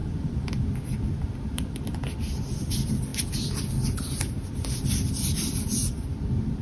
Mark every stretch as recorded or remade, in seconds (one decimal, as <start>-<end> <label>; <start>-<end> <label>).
0.0-1.8 remade; 1.8-3.1 recorded; 3.1-5.1 remade; 5.1-5.8 recorded; 5.8-6.6 remade